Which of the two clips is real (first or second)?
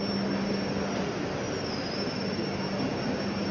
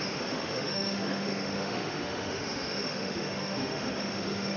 first